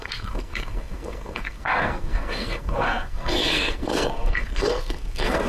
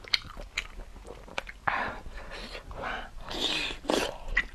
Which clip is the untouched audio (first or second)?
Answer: second